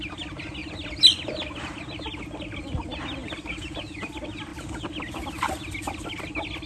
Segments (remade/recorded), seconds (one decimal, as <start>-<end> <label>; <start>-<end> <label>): 0.0-0.6 recorded; 0.6-1.8 remade; 1.8-3.2 recorded; 3.2-4.1 remade; 4.1-6.7 recorded